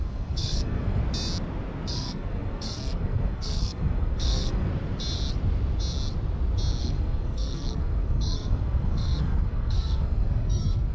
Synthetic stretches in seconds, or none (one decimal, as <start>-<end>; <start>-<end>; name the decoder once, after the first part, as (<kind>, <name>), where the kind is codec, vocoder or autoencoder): 0.0-1.0 (codec, SNAC); 1.9-4.7; 6.8-10.9